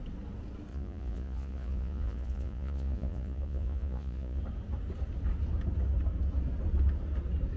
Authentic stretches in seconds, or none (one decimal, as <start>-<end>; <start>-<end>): 0.0-0.7; 4.4-7.6